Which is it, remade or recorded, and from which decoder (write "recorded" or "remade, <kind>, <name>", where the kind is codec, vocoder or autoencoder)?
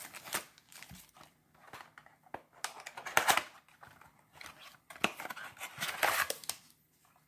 recorded